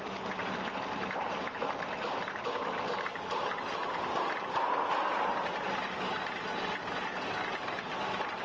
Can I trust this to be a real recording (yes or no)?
yes